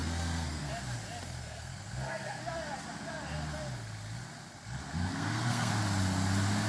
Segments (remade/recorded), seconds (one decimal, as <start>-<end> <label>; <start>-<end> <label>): 0.0-0.7 remade; 0.7-1.4 recorded; 1.4-2.4 remade; 2.4-5.0 recorded; 5.0-5.7 remade; 5.7-6.7 recorded